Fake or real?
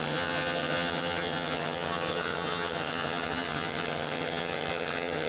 fake